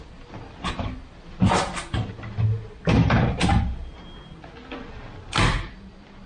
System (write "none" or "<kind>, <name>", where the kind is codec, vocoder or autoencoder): none